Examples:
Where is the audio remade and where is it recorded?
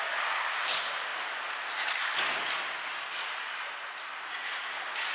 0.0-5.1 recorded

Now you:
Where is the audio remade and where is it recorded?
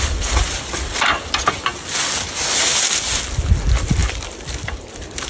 0.0-5.3 recorded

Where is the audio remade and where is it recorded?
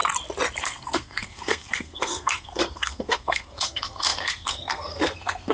0.0-0.6 recorded; 0.6-5.5 remade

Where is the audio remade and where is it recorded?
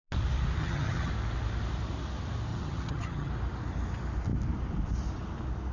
0.0-0.6 recorded; 0.6-1.1 remade; 1.1-2.5 recorded; 2.5-3.3 remade; 3.3-5.7 recorded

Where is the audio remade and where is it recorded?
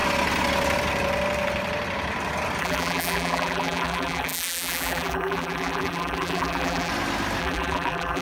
0.0-2.6 recorded; 2.6-6.9 remade; 6.9-7.4 recorded; 7.4-8.2 remade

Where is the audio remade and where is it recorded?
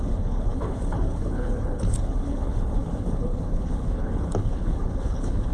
0.0-5.5 remade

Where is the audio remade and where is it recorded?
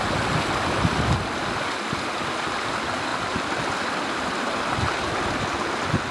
0.0-6.1 recorded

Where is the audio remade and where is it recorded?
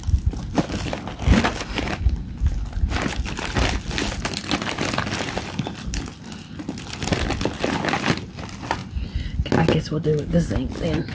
0.0-11.1 recorded